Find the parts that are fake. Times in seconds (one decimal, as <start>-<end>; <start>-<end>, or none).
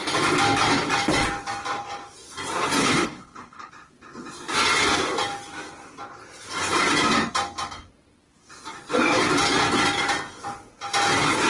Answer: 2.8-3.7